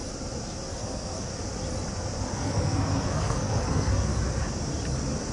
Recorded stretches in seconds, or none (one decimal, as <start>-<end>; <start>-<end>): 0.0-0.7; 1.3-2.3; 4.1-5.3